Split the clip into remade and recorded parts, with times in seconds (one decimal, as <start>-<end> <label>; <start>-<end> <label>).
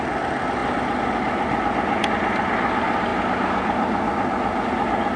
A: 0.0-5.2 recorded